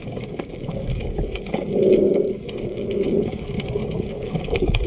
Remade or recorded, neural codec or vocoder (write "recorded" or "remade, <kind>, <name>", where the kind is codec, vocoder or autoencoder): remade, codec, DAC